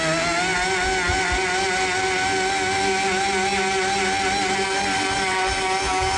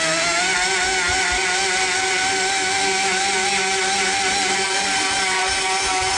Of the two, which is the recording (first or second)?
first